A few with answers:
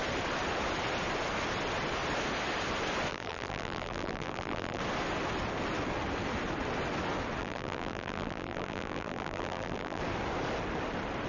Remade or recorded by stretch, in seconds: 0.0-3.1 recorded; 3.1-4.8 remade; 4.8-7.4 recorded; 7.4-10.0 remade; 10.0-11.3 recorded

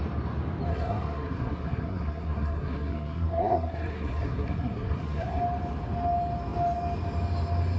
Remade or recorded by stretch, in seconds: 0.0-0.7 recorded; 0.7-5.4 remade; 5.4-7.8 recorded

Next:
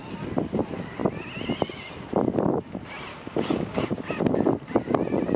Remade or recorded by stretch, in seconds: 0.0-3.1 recorded; 3.1-4.0 remade; 4.0-5.4 recorded

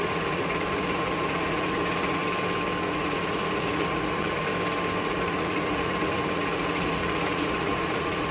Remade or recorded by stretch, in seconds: 0.0-2.2 remade; 2.2-2.8 recorded; 2.8-4.5 remade; 4.5-5.0 recorded; 5.0-8.3 remade

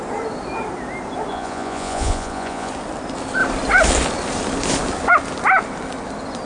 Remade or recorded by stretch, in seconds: 0.0-1.3 recorded; 1.3-2.7 remade; 2.7-6.5 recorded

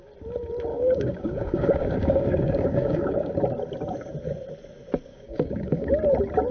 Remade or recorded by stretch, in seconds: 0.0-0.7 recorded; 0.7-3.3 remade; 3.3-5.1 recorded; 5.1-5.9 remade; 5.9-6.5 recorded

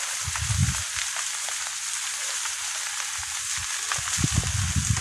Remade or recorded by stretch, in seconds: 0.0-5.0 recorded

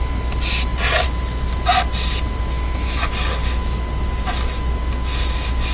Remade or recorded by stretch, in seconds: 0.0-5.7 recorded